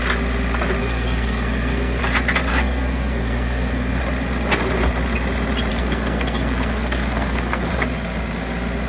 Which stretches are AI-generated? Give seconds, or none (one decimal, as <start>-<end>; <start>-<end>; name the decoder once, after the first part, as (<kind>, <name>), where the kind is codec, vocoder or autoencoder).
0.8-2.0 (codec, SNAC); 2.5-4.0; 5.7-7.7